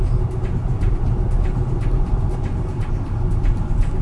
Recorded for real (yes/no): yes